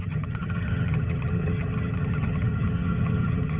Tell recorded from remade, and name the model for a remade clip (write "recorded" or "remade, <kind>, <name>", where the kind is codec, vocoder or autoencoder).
remade, vocoder, HiFi-GAN